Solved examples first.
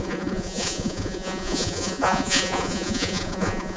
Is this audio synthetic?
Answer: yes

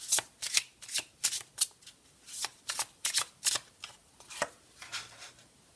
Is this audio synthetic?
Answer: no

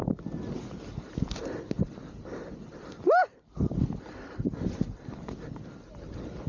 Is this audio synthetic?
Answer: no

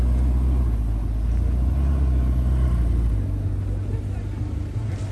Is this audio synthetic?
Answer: no